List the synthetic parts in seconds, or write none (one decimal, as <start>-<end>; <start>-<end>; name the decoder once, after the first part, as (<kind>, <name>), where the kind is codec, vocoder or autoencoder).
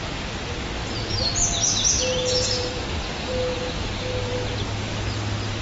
none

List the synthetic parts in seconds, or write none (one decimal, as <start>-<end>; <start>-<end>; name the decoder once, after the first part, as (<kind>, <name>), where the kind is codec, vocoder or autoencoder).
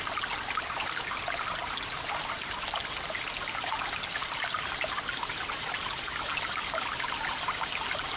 none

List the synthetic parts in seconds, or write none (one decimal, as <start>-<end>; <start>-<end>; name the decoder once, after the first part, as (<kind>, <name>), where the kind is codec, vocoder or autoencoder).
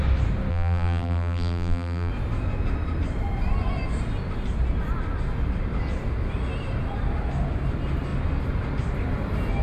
0.5-2.1 (vocoder, BigVGAN v2)